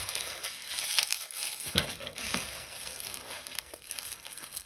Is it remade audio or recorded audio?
remade